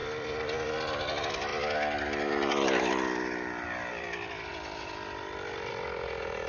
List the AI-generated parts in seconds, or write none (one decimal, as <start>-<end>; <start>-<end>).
none